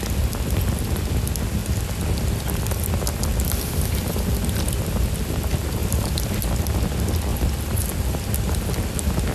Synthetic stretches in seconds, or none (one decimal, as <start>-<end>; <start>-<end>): 5.8-6.6